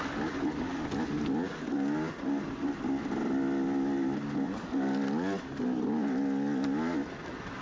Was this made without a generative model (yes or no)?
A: yes